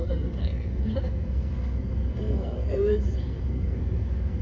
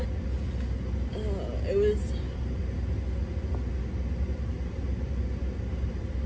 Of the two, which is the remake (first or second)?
first